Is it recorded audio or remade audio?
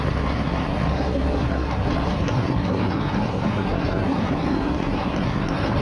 remade